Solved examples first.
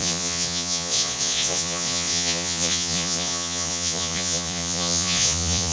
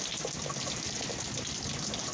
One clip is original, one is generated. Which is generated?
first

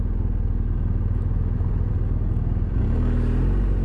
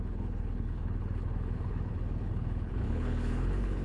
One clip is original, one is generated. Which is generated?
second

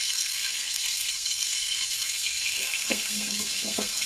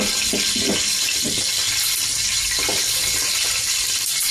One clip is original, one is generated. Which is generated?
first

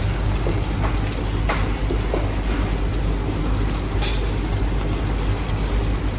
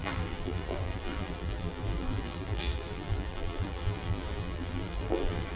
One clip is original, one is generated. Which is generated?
second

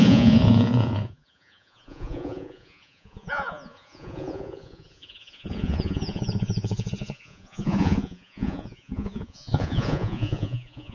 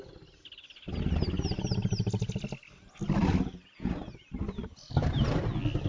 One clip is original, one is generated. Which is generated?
first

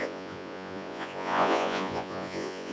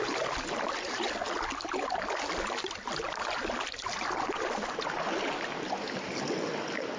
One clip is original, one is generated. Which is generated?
first